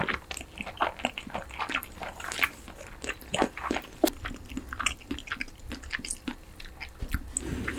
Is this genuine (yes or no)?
yes